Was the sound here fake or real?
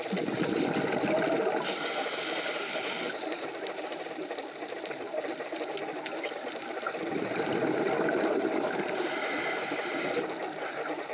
real